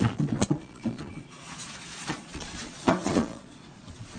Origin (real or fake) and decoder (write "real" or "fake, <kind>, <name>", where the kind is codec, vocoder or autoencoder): fake, vocoder, Vocos